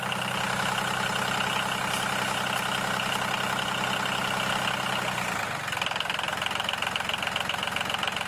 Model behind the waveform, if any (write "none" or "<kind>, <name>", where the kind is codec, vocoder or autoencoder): none